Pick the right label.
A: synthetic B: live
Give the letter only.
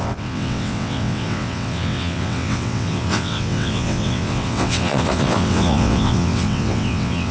A